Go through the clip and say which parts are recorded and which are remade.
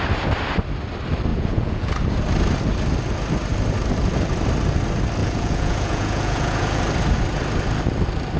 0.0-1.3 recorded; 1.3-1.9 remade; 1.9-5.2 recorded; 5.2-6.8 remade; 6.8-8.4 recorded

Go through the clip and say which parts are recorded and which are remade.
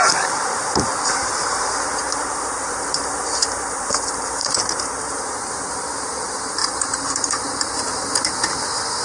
0.0-9.0 remade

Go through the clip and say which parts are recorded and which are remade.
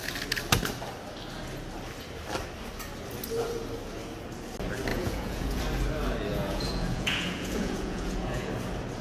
0.0-4.9 recorded; 4.9-5.6 remade; 5.6-6.3 recorded; 6.3-8.5 remade; 8.5-9.0 recorded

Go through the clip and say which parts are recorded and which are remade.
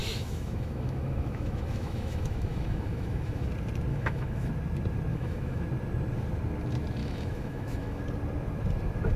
0.0-3.5 remade; 3.5-3.9 recorded; 3.9-4.5 remade; 4.5-5.1 recorded; 5.1-5.6 remade; 5.6-7.0 recorded; 7.0-8.0 remade; 8.0-9.2 recorded